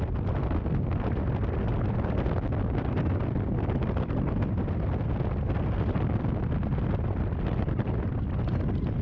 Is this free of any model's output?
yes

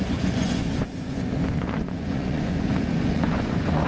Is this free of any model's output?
no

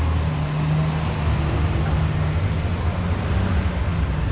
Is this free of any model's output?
yes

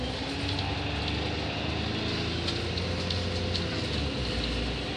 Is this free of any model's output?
yes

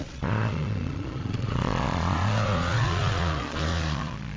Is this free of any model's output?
no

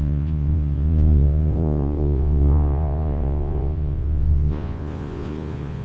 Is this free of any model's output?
no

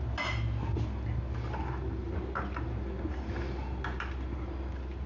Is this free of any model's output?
yes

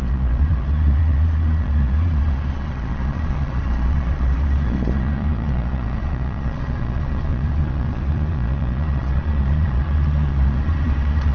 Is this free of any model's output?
no